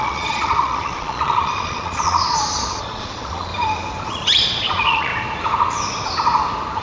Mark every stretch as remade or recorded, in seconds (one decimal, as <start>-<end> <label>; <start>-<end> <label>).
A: 0.0-3.5 remade; 3.5-4.1 recorded; 4.1-5.1 remade; 5.1-6.8 recorded